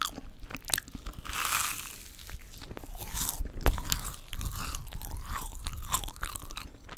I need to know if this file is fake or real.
real